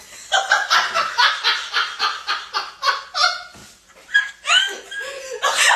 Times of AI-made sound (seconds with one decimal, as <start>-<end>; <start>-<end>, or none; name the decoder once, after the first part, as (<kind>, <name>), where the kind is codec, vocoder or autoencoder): none